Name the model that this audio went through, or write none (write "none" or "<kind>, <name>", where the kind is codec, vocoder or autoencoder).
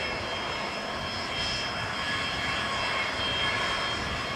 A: none